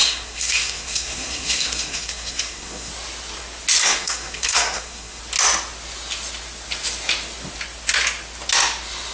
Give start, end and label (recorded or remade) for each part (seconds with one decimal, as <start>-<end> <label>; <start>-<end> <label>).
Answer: 0.0-2.9 remade; 2.9-3.8 recorded; 3.8-5.2 remade; 5.2-9.1 recorded